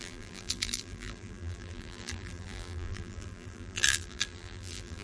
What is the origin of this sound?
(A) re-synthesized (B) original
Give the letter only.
A